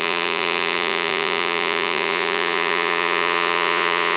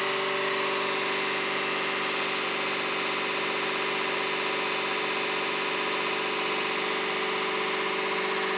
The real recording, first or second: second